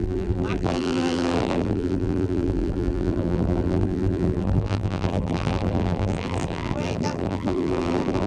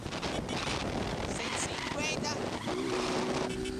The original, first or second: second